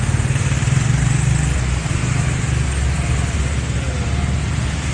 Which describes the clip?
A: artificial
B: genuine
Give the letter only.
B